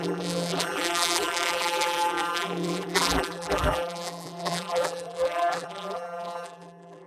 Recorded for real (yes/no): no